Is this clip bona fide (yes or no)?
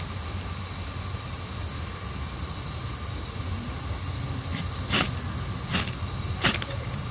yes